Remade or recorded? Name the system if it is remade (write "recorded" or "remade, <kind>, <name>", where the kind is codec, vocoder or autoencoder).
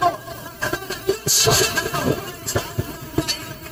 remade, vocoder, BigVGAN v2